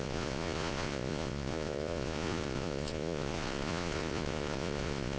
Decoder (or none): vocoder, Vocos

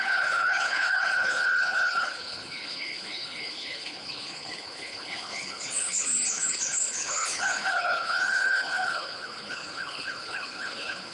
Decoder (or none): codec, HILCodec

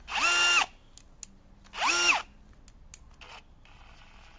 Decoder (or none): none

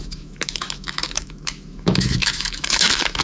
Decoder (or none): autoencoder, DAC-VAE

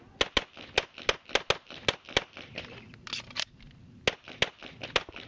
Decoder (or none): none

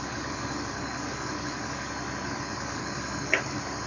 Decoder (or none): codec, DAC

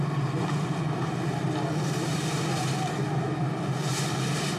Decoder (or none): none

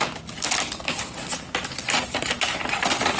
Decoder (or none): none